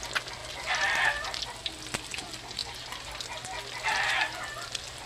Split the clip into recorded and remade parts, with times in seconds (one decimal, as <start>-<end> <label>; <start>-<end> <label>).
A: 0.0-0.4 recorded; 0.4-1.4 remade; 1.4-5.1 recorded